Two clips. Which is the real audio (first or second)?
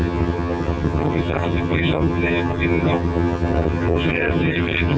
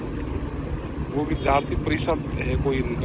second